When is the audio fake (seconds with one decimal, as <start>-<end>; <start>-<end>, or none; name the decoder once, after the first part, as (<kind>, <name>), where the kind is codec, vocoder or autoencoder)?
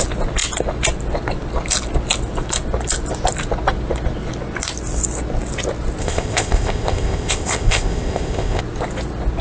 6.0-8.6 (codec, ZipCodec)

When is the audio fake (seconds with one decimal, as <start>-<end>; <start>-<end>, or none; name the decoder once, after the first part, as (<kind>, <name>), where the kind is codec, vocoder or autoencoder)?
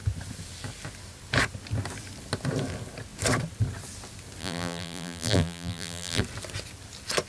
4.4-6.2 (vocoder, BigVGAN v2)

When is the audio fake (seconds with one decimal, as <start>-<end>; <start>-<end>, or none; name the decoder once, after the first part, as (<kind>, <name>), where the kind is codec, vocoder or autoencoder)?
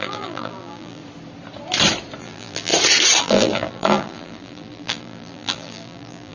0.0-1.0 (vocoder, BigVGAN v2); 2.2-2.7; 3.2-6.3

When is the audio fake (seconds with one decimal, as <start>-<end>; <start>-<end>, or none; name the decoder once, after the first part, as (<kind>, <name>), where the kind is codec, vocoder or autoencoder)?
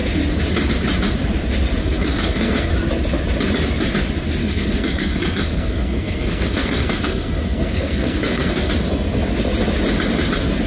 1.8-2.7 (codec, SNAC); 4.4-8.7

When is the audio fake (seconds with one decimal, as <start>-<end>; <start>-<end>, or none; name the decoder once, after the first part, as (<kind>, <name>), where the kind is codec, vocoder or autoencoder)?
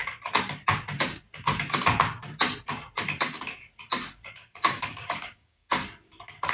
4.4-5.7 (codec, DAC)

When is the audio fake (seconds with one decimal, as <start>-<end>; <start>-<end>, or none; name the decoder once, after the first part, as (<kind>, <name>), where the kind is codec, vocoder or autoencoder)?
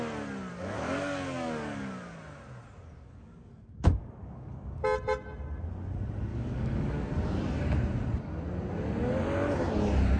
0.5-2.2 (codec, DAC); 3.0-4.8; 6.3-7.1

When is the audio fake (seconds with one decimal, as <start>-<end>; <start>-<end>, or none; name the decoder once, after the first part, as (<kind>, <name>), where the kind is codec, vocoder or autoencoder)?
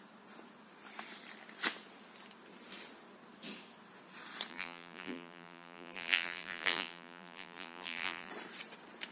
4.5-8.3 (vocoder, BigVGAN v2)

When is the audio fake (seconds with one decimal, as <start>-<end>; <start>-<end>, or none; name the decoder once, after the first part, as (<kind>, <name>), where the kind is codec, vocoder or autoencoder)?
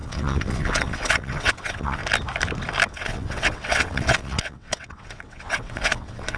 0.0-2.0 (vocoder, WaveNeXt); 2.9-6.4